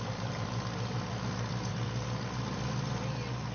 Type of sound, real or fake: fake